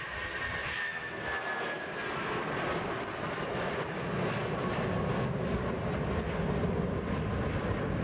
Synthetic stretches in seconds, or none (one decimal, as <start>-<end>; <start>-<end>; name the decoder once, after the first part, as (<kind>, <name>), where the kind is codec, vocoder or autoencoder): 0.6-1.1 (autoencoder, DAC-VAE)